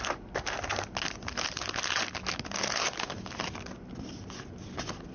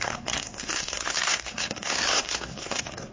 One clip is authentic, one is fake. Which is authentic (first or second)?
first